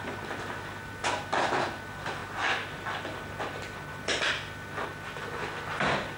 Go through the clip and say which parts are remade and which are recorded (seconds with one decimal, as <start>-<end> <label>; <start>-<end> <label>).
0.0-4.9 recorded; 4.9-5.7 remade; 5.7-6.2 recorded